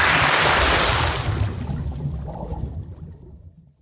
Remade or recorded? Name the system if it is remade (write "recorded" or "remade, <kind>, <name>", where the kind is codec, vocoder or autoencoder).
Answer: recorded